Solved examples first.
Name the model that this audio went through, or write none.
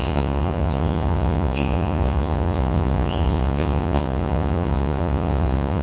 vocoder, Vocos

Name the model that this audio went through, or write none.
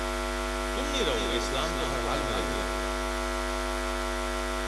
none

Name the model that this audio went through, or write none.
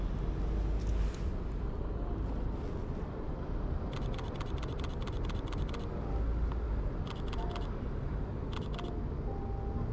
none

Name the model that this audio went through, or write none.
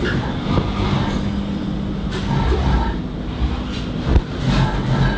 none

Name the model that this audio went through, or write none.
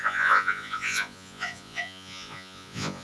vocoder, Vocos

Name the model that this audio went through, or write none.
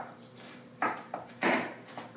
vocoder, BigVGAN v2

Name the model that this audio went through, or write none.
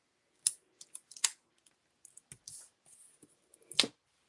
none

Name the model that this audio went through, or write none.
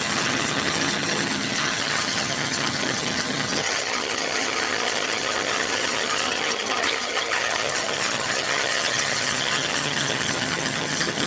vocoder, HiFi-GAN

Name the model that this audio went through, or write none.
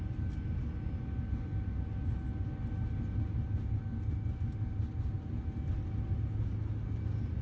none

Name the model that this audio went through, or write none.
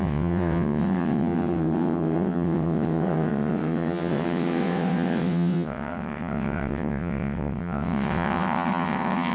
vocoder, WaveNeXt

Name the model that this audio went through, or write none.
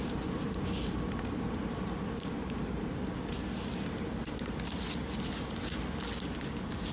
none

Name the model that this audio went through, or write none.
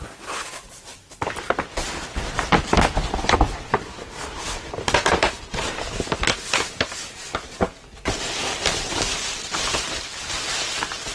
none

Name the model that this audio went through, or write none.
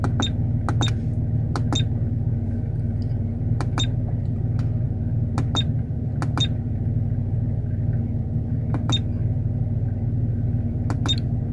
none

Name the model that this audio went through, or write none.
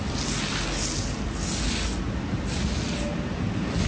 none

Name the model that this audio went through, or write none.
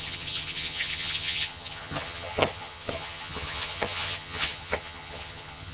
vocoder, HiFi-GAN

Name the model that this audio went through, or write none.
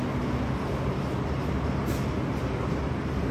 none